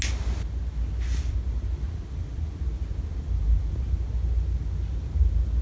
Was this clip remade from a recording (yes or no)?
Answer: no